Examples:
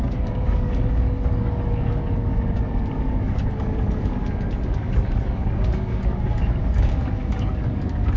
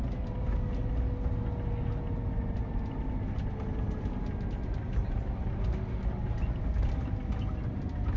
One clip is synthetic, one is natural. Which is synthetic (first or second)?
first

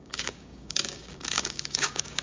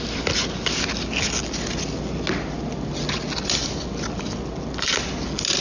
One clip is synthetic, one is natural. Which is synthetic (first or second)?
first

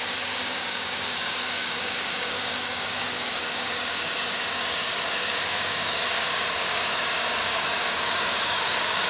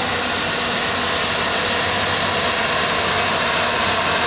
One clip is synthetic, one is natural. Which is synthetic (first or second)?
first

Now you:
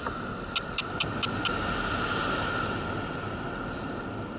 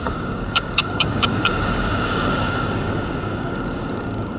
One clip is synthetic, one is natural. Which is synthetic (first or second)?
second